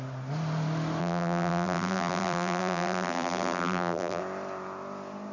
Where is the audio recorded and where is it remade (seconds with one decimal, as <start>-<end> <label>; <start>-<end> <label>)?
0.0-1.0 recorded; 1.0-4.2 remade; 4.2-5.3 recorded